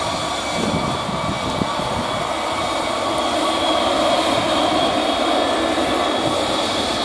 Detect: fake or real real